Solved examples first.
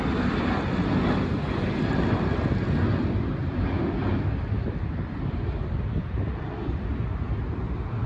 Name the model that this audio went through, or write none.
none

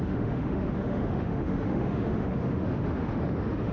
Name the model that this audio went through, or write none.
autoencoder, DAC-VAE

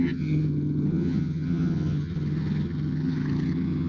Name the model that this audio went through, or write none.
vocoder, HiFi-GAN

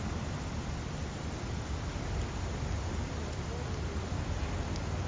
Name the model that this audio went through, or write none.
none